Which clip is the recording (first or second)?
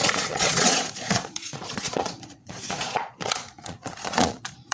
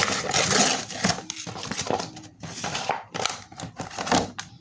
second